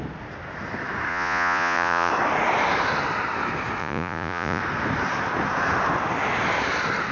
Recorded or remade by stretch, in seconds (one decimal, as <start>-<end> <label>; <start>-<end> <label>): 0.0-1.1 recorded; 1.1-2.1 remade; 2.1-3.8 recorded; 3.8-4.6 remade; 4.6-7.1 recorded